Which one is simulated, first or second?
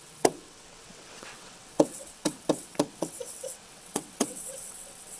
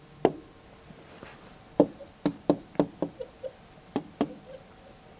first